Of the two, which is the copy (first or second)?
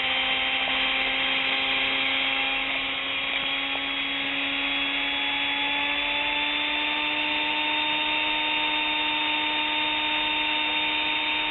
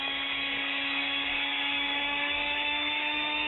second